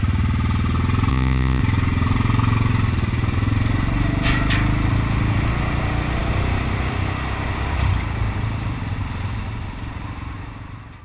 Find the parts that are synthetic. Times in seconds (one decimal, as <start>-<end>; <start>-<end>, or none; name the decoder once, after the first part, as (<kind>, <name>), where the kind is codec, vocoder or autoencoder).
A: 1.1-1.6 (vocoder, Vocos)